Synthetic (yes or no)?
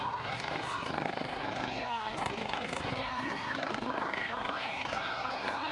yes